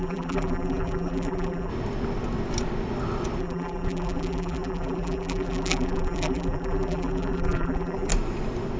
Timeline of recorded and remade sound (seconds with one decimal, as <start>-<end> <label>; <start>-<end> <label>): 0.0-1.7 remade; 1.7-3.4 recorded; 3.4-8.1 remade; 8.1-8.8 recorded